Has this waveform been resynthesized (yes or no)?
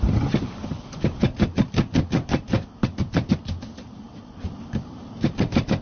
no